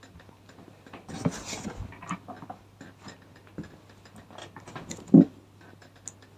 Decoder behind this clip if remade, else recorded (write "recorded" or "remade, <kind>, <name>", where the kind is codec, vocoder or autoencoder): recorded